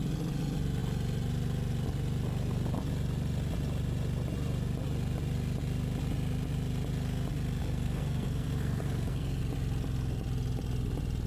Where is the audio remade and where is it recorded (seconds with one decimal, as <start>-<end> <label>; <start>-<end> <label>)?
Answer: 0.0-7.6 recorded; 7.6-9.4 remade; 9.4-11.3 recorded